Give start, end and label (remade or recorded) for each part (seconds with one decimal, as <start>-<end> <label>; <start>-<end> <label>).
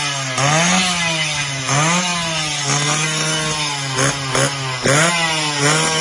0.0-6.0 recorded